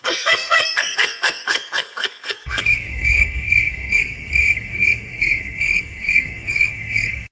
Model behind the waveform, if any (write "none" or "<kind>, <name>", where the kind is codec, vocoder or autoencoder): codec, SNAC